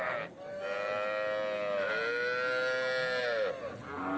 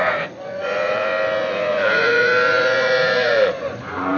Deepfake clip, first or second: second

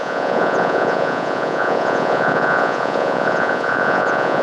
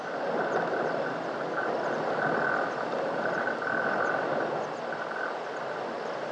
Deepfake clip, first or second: first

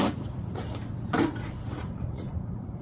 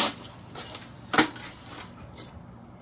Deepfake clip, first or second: first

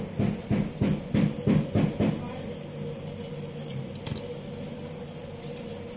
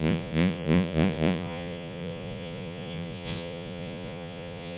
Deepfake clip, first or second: second